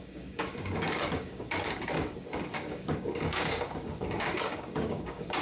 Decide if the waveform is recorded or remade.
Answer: remade